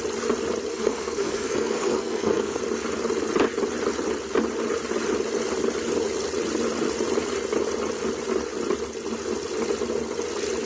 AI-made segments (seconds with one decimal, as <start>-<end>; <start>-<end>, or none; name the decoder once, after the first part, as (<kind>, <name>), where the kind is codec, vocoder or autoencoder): 0.7-2.6 (codec, SNAC)